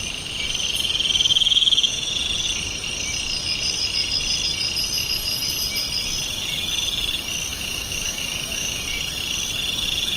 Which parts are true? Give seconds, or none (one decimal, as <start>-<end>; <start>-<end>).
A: 0.0-1.3; 2.1-7.5; 8.8-10.2